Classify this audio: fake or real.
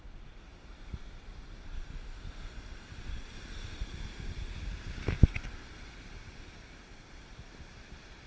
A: real